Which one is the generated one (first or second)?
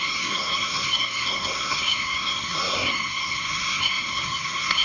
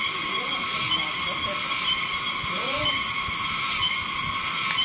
first